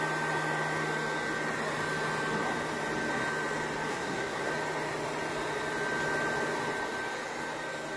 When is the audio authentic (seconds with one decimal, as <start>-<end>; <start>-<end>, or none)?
0.0-3.9; 4.5-8.0